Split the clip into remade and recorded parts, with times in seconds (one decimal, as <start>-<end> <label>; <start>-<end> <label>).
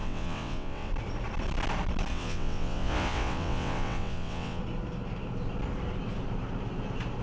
0.0-0.9 remade; 0.9-2.1 recorded; 2.1-4.6 remade; 4.6-7.2 recorded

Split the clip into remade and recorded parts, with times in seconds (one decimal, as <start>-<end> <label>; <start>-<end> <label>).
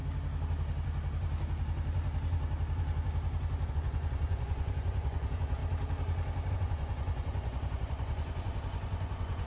0.0-3.7 recorded; 3.7-5.6 remade; 5.6-6.5 recorded; 6.5-9.5 remade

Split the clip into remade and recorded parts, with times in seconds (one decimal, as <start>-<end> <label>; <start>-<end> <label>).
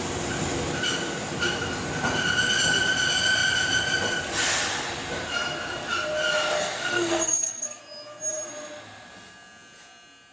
0.0-6.5 recorded; 6.5-7.8 remade; 7.8-10.3 recorded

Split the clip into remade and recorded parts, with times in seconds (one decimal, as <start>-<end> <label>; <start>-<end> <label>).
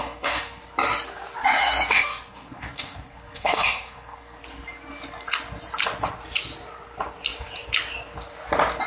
0.0-0.6 remade; 0.6-1.6 recorded; 1.6-4.4 remade; 4.4-8.9 recorded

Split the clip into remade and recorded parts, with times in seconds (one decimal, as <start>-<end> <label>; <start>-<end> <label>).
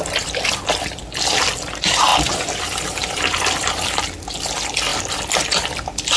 0.0-2.1 remade; 2.1-2.6 recorded; 2.6-4.9 remade; 4.9-6.2 recorded